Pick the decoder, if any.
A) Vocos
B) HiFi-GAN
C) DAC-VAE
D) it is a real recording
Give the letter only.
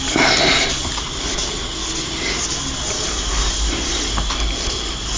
D